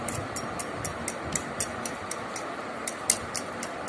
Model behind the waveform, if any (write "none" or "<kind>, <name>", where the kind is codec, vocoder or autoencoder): none